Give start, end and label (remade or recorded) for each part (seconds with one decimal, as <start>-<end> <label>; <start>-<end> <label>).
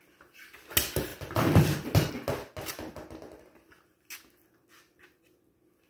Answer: 0.0-5.9 recorded